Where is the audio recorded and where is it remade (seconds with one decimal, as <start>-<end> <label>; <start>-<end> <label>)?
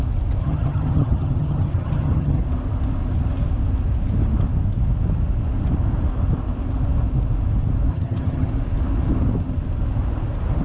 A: 0.0-0.4 recorded; 0.4-2.4 remade; 2.4-7.9 recorded; 7.9-8.5 remade; 8.5-10.6 recorded